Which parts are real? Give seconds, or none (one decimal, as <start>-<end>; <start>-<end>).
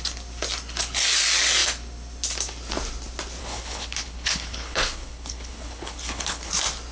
0.0-3.4; 6.5-6.9